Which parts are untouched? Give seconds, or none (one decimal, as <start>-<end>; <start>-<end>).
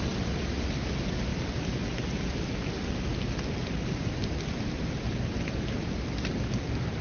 0.0-7.0